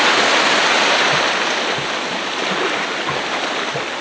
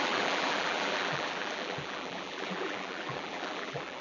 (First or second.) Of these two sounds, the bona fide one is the first